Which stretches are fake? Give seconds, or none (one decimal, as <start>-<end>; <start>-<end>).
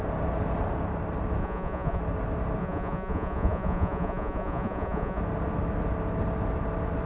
1.4-2.0; 2.6-5.2